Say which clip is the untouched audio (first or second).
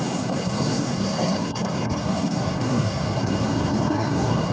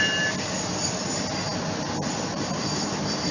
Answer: second